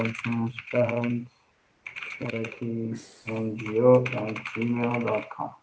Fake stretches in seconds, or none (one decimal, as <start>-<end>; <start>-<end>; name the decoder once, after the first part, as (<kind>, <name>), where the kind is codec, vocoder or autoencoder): 0.5-1.1 (vocoder, Vocos); 1.9-2.6